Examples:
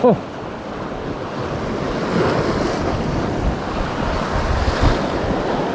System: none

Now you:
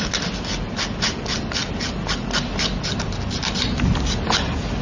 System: none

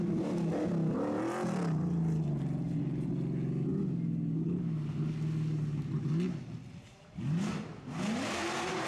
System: none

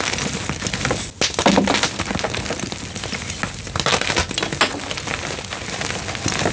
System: none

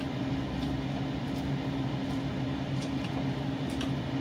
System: none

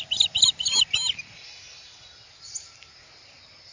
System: none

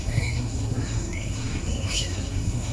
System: codec, SNAC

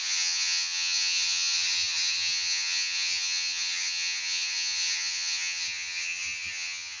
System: vocoder, HiFi-GAN